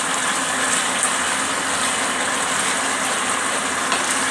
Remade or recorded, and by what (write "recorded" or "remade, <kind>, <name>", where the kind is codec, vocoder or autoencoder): recorded